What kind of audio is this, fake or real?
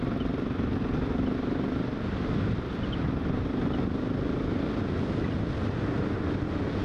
real